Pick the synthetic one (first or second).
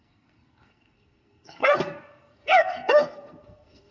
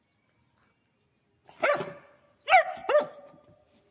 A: first